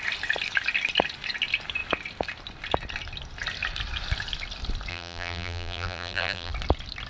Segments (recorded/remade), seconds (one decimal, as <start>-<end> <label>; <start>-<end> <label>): 0.0-4.9 recorded; 4.9-6.5 remade; 6.5-7.1 recorded